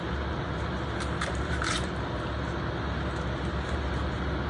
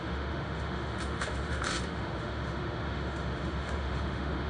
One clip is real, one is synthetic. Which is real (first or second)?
first